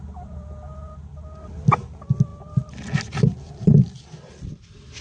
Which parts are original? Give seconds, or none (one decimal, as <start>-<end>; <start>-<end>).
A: 0.0-5.0